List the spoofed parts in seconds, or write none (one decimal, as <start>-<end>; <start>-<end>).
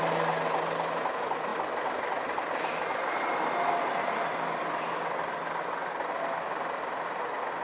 none